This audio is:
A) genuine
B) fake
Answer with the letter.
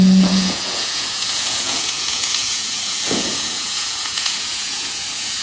B